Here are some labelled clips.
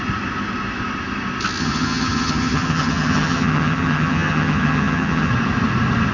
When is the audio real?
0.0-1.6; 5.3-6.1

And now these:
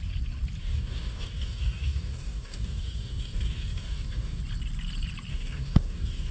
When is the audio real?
0.0-0.6; 4.4-5.3

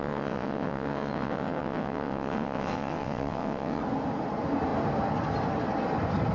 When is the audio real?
3.8-6.3

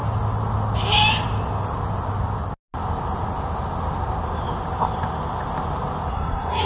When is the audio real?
0.0-6.1

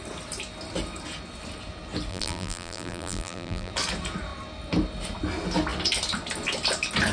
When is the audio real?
0.0-2.1; 3.7-7.1

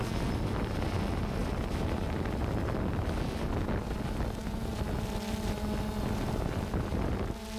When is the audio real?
0.0-7.6